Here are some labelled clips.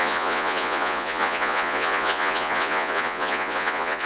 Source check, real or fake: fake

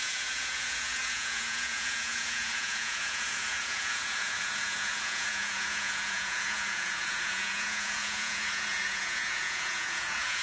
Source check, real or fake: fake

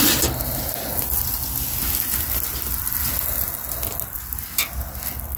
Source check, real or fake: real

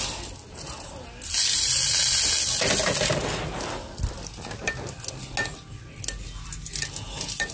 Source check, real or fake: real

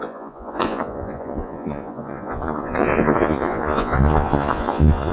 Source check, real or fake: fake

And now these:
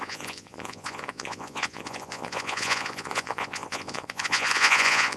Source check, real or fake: fake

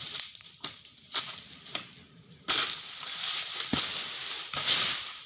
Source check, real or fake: real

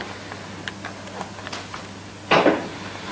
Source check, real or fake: real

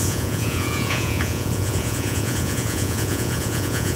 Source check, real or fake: fake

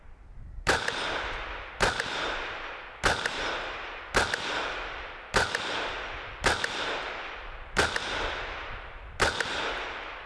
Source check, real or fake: real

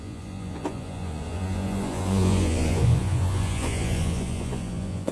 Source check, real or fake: fake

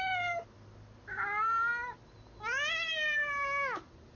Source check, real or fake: real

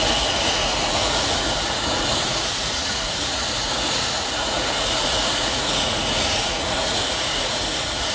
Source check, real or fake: fake